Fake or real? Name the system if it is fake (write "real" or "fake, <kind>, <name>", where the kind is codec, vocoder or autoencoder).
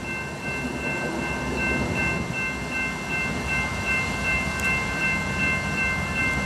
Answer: real